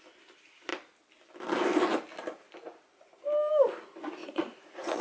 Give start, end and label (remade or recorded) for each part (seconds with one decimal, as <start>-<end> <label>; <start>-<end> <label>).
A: 0.0-4.2 recorded; 4.2-5.0 remade